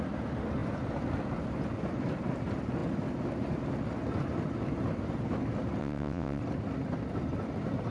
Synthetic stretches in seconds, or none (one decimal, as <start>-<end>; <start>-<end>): 5.8-6.4